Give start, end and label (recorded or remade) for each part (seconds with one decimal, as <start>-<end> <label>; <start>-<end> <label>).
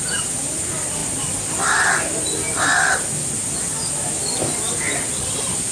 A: 0.0-5.7 recorded